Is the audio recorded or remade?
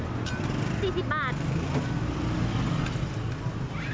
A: recorded